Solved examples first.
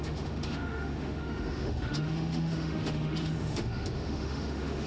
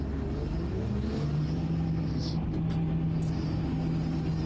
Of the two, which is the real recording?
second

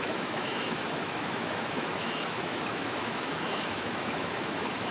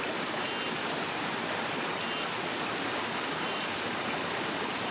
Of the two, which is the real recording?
second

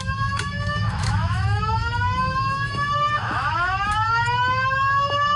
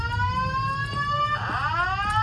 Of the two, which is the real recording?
second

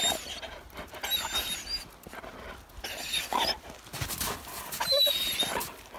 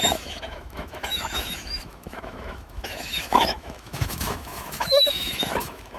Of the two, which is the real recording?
first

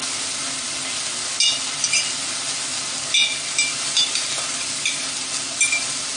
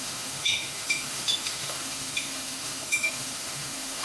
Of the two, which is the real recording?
first